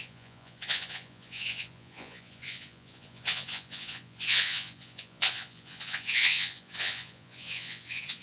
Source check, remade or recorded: remade